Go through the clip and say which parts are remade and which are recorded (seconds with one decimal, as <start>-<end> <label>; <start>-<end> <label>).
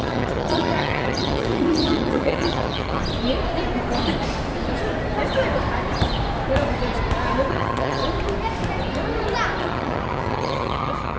0.0-3.0 remade; 3.0-7.5 recorded; 7.5-8.0 remade; 8.0-9.6 recorded; 9.6-11.2 remade